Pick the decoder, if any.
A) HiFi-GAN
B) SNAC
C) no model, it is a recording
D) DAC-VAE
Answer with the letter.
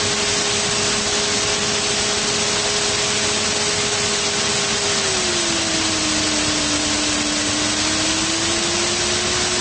C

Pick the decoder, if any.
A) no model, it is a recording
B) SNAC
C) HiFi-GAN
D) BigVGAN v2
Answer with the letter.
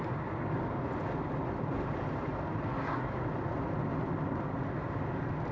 A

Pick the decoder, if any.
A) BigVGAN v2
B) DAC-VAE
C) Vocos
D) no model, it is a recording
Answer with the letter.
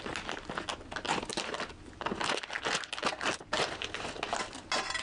D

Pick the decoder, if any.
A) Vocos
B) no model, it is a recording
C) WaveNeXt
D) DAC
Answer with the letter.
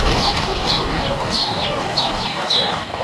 D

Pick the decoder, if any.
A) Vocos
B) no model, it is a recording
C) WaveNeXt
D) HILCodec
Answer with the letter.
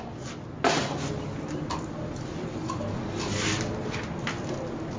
B